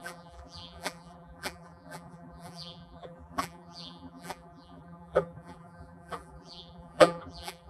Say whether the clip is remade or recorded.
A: remade